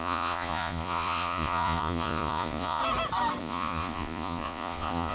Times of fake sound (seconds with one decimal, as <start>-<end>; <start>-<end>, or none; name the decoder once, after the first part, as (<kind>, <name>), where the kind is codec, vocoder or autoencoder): 0.0-2.8 (vocoder, Vocos); 3.4-5.1